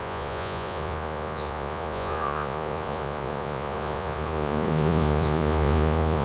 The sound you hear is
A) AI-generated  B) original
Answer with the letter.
A